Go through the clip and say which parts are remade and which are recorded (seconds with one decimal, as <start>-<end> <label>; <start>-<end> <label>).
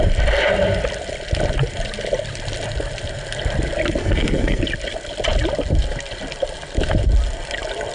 0.0-4.0 recorded; 4.0-4.6 remade; 4.6-7.9 recorded